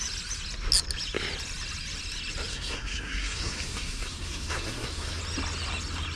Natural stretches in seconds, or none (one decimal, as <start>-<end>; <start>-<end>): 0.0-2.5; 5.2-6.2

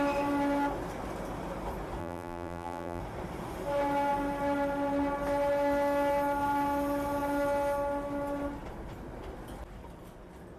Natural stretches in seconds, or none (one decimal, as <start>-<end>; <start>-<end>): 0.0-2.0; 3.0-10.6

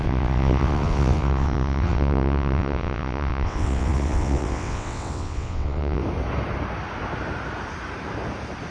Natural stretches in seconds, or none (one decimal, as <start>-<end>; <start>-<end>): 6.0-8.7

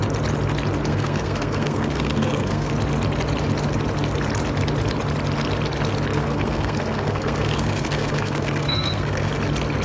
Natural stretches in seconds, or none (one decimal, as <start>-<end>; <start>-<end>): 0.0-0.9; 2.7-6.1; 9.3-9.8

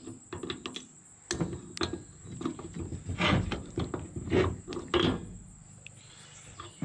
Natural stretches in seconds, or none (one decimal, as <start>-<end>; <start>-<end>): 0.0-6.8

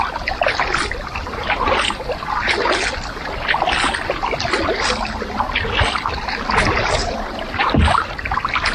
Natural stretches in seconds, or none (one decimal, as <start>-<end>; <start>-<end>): 0.0-1.1; 2.2-7.0; 7.7-8.7

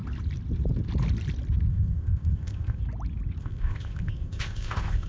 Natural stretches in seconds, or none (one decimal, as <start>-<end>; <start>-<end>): 0.0-1.7; 2.8-3.4